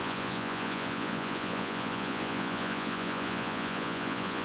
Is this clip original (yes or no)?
no